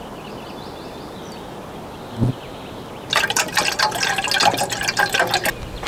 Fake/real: real